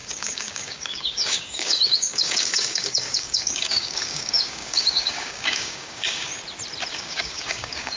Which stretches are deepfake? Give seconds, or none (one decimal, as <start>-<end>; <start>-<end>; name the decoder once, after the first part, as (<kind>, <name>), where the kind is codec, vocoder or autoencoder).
0.0-6.3 (codec, DAC); 6.9-8.0